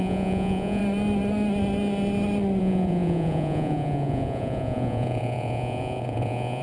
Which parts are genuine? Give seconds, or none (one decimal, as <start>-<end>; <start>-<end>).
0.8-2.6